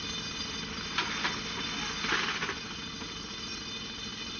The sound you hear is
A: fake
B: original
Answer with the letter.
B